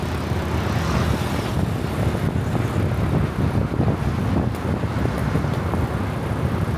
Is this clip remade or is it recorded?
recorded